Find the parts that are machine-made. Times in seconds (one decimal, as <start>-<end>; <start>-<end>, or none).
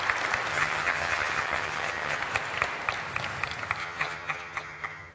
0.5-2.2; 3.8-5.1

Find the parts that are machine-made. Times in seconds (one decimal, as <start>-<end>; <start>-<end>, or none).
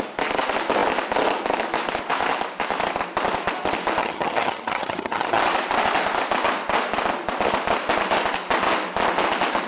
4.0-5.4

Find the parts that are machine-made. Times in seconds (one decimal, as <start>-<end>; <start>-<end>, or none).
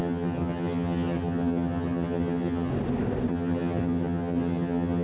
0.0-2.7; 3.3-5.0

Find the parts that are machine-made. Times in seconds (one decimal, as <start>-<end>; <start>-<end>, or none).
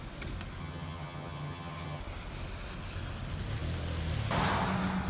0.6-2.0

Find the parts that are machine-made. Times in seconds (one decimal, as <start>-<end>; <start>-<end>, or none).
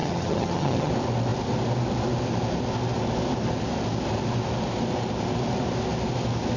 0.0-0.9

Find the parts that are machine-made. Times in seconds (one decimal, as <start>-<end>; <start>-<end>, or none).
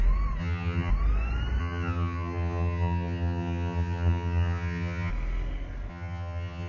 0.4-0.9; 1.6-5.1; 5.9-6.7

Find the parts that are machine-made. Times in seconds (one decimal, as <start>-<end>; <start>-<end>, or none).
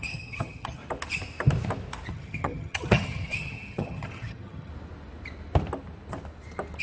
0.0-0.8; 2.1-4.7